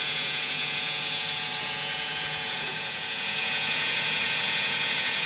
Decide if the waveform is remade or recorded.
remade